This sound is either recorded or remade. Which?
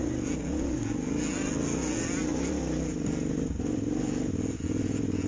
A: recorded